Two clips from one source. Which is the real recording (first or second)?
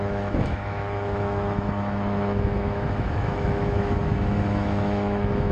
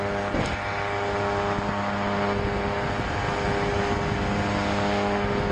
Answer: second